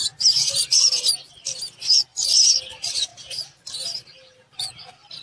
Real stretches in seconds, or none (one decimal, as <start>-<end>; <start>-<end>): 0.0-5.2